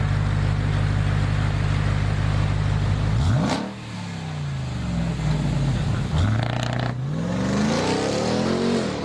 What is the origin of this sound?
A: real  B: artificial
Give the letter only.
A